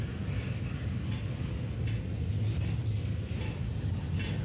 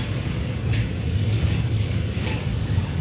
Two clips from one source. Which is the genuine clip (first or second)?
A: first